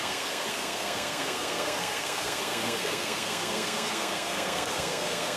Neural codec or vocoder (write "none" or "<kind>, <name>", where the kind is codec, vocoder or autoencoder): codec, SNAC